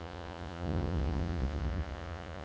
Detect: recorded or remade remade